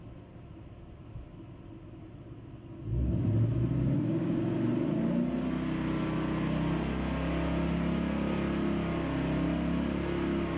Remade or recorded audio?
recorded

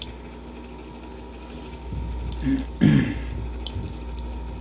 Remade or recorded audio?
recorded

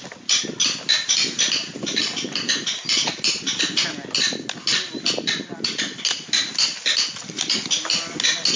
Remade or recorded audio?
recorded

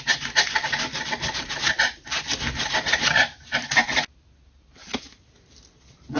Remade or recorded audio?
recorded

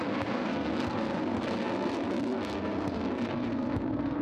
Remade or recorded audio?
remade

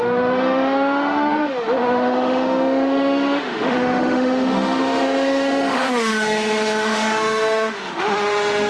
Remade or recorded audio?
remade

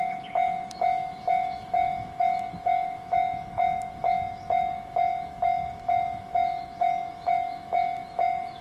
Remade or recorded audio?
remade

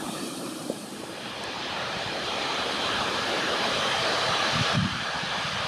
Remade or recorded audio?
remade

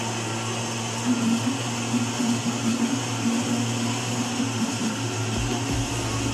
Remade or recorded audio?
recorded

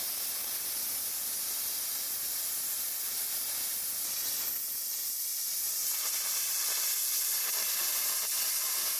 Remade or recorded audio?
recorded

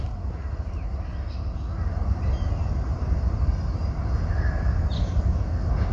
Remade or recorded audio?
recorded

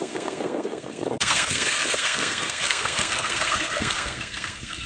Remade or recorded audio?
remade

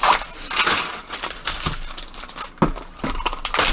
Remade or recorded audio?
recorded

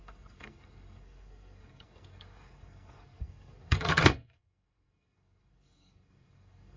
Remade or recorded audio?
remade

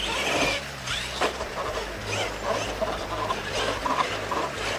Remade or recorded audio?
recorded